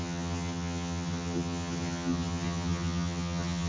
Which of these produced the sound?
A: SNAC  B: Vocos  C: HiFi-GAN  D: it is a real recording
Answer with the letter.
C